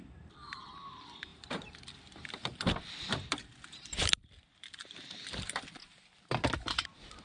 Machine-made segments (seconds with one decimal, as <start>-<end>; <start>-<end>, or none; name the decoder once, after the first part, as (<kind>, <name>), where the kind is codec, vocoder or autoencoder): 0.0-5.8 (vocoder, BigVGAN v2); 6.5-7.2